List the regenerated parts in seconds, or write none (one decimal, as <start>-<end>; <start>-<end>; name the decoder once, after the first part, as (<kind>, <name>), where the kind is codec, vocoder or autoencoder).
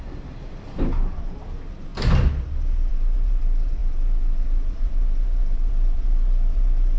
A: 0.0-1.9 (vocoder, BigVGAN v2); 2.9-7.0